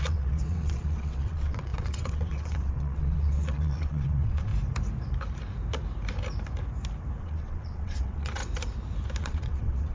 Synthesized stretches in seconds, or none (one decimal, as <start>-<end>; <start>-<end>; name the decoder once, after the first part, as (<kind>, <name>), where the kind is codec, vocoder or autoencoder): 0.0-4.5 (vocoder, WaveNeXt); 7.2-8.4; 9.2-9.9